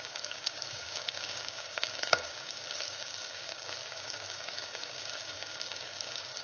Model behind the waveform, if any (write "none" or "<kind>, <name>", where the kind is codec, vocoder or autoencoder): codec, DAC